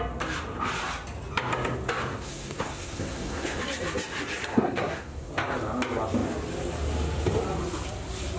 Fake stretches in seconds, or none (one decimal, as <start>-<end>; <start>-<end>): 2.1-3.6; 4.5-5.3